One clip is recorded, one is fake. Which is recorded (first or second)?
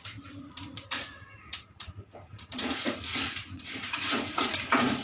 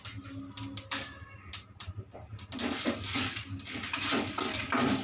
second